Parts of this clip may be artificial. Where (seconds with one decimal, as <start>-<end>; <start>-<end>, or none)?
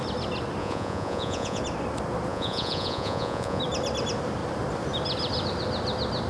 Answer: 0.6-1.6; 2.3-3.6